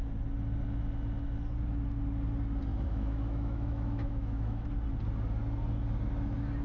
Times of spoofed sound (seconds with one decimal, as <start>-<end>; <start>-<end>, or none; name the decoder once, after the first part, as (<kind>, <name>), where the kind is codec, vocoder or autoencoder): 2.7-4.7 (autoencoder, DAC-VAE)